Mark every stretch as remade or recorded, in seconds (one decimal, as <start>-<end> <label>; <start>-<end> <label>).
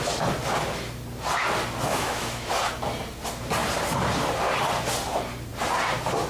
0.0-1.9 recorded; 1.9-2.5 remade; 2.5-6.3 recorded